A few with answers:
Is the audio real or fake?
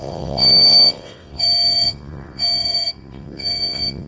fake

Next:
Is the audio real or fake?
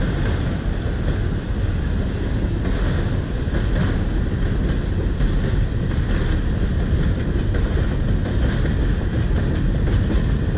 real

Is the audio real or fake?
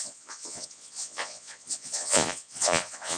fake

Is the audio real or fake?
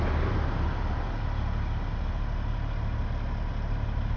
real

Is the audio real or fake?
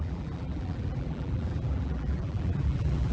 fake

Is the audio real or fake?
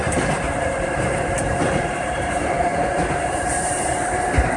fake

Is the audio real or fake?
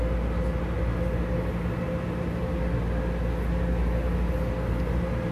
real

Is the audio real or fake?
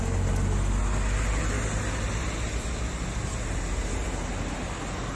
real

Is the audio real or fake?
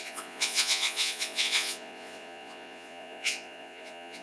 fake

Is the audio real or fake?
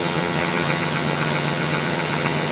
fake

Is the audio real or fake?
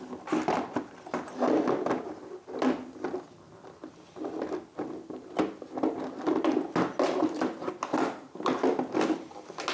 real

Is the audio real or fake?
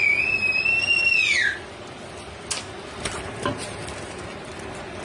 real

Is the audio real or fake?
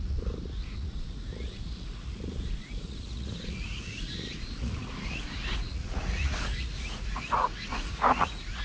fake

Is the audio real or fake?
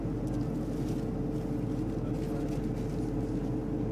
real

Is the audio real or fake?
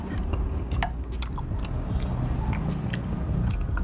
real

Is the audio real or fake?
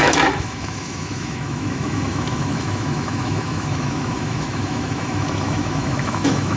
fake